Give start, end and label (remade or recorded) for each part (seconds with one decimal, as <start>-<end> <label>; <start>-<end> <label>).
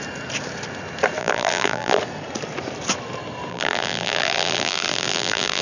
0.0-1.2 recorded; 1.2-2.0 remade; 2.0-3.5 recorded; 3.5-5.6 remade